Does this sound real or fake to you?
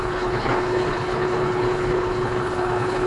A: fake